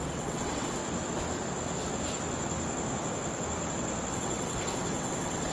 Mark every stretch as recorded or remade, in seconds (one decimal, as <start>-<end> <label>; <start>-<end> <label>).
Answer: 0.0-0.8 remade; 0.8-4.1 recorded; 4.1-5.5 remade